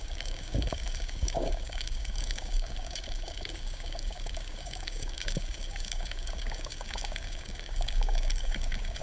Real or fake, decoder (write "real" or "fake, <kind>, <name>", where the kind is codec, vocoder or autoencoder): fake, codec, DAC